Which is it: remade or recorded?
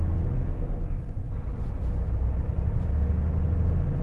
recorded